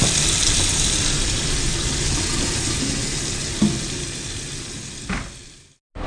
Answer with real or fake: real